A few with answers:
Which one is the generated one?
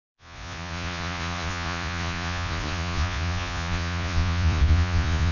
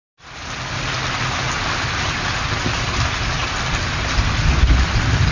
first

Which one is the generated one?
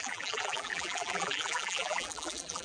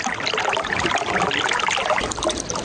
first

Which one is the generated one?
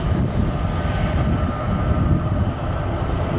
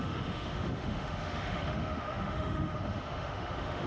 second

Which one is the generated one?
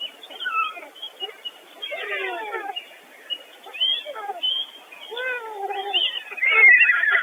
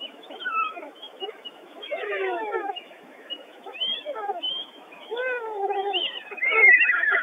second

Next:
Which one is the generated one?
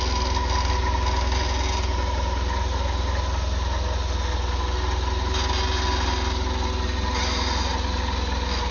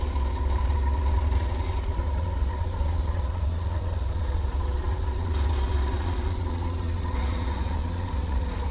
second